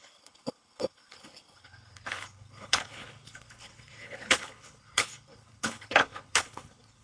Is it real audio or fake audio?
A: fake